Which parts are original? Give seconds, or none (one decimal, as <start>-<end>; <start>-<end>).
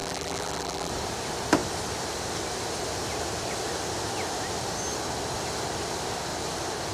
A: 0.9-6.9